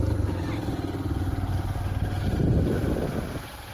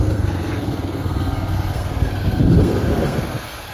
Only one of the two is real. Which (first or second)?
first